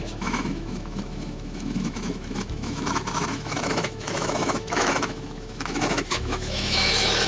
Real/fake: fake